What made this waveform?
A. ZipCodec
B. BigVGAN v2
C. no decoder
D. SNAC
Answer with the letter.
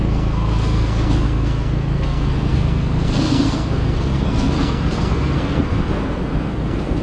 D